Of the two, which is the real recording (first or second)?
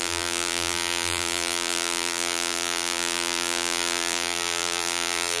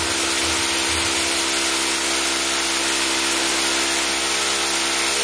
second